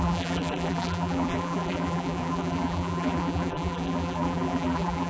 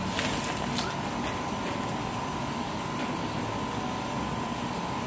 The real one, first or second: second